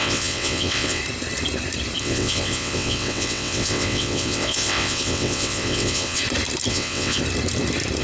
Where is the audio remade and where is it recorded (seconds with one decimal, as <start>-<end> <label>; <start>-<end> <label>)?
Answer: 0.0-1.0 remade; 1.0-2.0 recorded; 2.0-6.2 remade; 6.2-6.7 recorded; 6.7-7.2 remade; 7.2-8.0 recorded

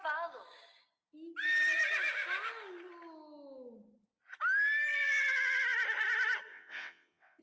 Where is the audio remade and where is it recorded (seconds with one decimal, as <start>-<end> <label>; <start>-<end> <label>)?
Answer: 0.0-6.5 recorded; 6.5-7.4 remade

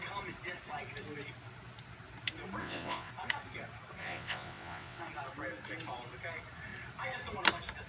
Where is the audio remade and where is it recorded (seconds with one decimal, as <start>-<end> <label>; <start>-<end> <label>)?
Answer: 0.0-2.6 recorded; 2.6-3.1 remade; 3.1-4.0 recorded; 4.0-5.0 remade; 5.0-7.9 recorded

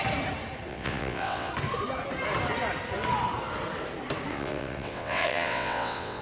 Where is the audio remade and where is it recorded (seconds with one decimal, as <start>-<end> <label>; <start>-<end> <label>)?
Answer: 0.0-0.7 recorded; 0.7-1.5 remade; 1.5-4.3 recorded; 4.3-6.2 remade